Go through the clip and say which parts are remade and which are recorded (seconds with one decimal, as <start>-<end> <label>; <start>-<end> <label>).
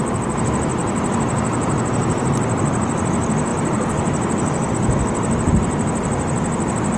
0.0-0.8 recorded; 0.8-2.2 remade; 2.2-3.5 recorded; 3.5-4.7 remade; 4.7-7.0 recorded